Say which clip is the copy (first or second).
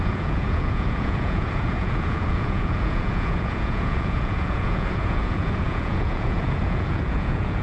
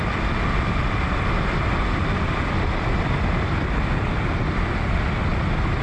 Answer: first